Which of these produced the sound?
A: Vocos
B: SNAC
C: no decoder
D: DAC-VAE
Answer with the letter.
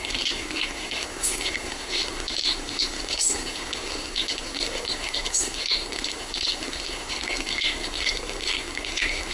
B